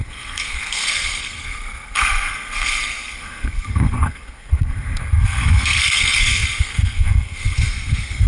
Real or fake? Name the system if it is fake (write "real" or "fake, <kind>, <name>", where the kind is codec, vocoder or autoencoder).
fake, codec, SNAC